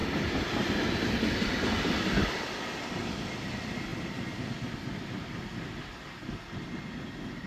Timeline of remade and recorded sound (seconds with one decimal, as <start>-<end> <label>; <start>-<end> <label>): 0.0-1.3 remade; 1.3-7.5 recorded